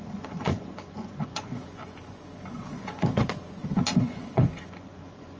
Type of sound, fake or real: fake